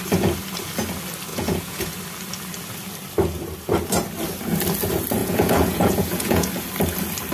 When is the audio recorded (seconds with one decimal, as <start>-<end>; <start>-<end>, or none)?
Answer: 0.0-1.3; 2.0-5.2; 6.5-7.3